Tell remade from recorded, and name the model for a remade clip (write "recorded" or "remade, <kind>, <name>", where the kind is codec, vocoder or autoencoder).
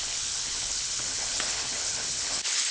remade, codec, HILCodec